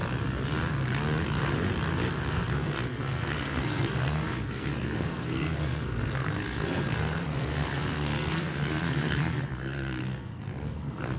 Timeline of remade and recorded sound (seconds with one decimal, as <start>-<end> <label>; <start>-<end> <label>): 0.0-2.3 recorded; 2.3-11.2 remade